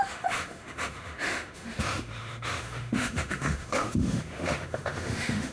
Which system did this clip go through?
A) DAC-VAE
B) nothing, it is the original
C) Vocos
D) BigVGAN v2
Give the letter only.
A